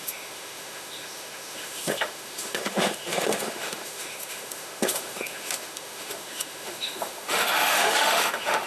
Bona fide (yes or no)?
no